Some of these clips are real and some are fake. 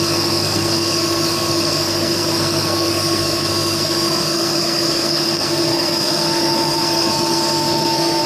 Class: fake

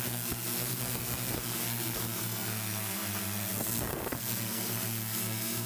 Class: fake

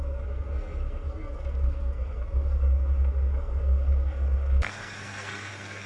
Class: fake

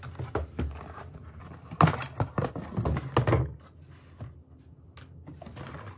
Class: real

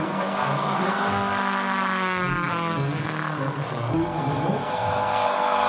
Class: fake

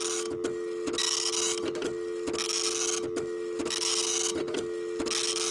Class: real